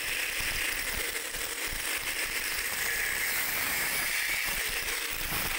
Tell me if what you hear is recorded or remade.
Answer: remade